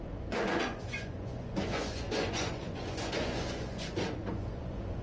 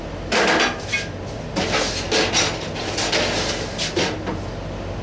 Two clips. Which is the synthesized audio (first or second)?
first